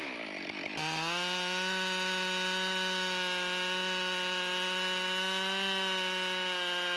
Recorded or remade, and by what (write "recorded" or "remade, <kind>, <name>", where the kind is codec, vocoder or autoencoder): recorded